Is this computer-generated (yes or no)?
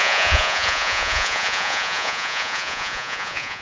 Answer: yes